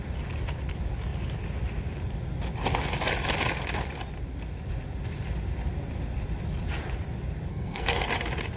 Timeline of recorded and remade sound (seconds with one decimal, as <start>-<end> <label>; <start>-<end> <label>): 0.0-7.5 recorded; 7.5-8.1 remade; 8.1-8.6 recorded